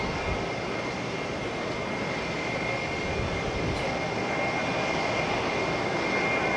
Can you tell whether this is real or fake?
real